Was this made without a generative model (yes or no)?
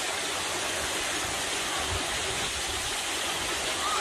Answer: no